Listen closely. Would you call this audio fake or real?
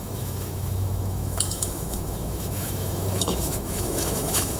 fake